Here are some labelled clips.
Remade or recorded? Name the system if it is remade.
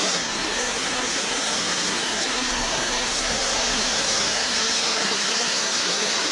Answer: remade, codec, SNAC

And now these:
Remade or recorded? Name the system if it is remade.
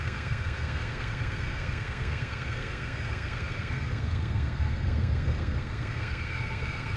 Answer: remade, codec, SNAC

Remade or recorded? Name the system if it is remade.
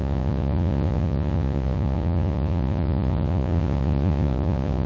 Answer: remade, vocoder, Vocos